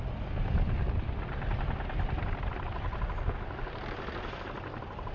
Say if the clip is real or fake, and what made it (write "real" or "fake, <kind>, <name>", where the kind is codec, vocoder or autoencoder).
real